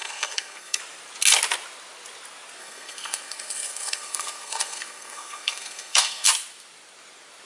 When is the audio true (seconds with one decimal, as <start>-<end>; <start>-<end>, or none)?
0.8-2.6; 6.3-7.5